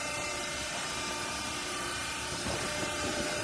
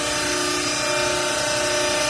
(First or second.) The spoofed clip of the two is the first